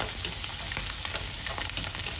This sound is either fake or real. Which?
real